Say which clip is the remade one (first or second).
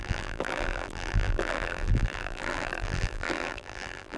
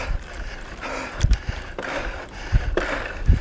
first